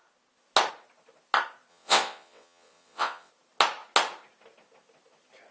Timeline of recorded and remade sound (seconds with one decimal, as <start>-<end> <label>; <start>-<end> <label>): 0.0-1.7 recorded; 1.7-3.3 remade; 3.3-5.5 recorded